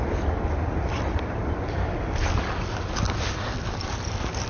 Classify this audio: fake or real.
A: real